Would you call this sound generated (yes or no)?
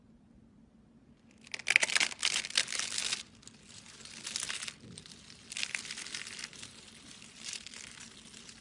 no